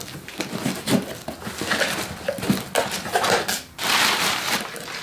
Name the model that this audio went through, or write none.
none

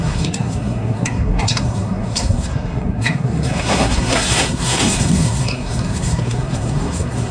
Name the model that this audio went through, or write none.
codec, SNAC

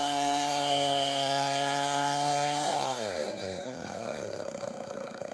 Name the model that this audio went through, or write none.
codec, SNAC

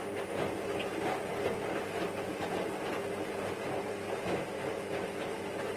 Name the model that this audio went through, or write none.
none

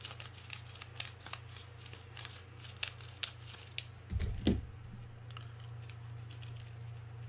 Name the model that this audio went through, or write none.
none